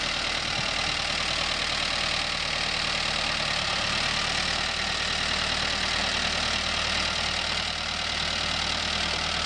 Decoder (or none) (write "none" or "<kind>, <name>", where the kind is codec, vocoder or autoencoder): vocoder, BigVGAN v2